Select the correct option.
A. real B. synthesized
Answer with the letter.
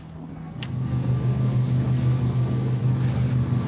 B